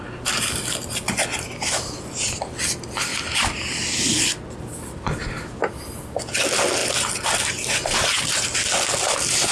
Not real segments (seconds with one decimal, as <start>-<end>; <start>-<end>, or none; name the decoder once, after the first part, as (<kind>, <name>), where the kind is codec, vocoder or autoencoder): none